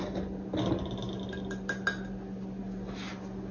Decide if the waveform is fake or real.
real